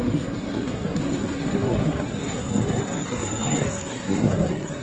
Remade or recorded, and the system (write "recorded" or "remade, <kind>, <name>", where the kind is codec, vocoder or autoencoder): remade, codec, SNAC